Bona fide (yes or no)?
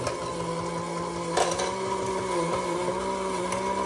yes